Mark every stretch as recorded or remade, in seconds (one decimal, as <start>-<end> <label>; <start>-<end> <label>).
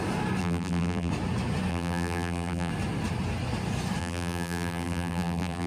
0.0-0.4 recorded; 0.4-1.1 remade; 1.1-1.7 recorded; 1.7-2.7 remade; 2.7-4.0 recorded; 4.0-5.7 remade